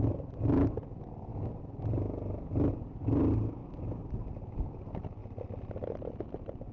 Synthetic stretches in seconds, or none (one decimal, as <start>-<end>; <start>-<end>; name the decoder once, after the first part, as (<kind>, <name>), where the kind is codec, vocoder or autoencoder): none